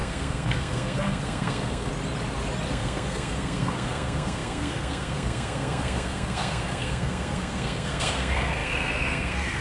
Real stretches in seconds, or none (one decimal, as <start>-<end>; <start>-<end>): 1.9-2.7